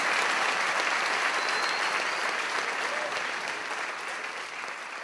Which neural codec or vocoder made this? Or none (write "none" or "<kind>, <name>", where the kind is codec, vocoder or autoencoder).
none